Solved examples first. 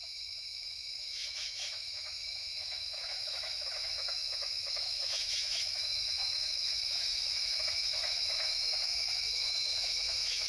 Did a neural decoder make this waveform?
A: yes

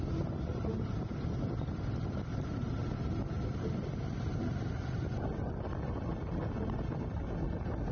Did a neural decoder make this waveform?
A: no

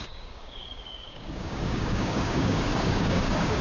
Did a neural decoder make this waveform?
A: yes